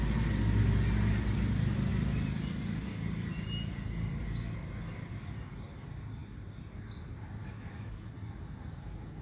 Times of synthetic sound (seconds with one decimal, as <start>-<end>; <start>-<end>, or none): 7.4-8.1